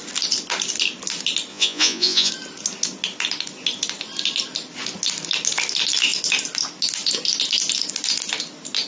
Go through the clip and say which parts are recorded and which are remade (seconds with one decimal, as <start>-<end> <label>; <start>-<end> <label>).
0.0-1.5 recorded; 1.5-2.3 remade; 2.3-8.9 recorded